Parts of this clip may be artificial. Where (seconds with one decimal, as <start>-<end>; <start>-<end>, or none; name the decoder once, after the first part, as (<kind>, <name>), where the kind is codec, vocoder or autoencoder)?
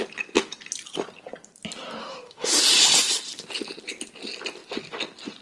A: 2.0-2.6 (autoencoder, DAC-VAE)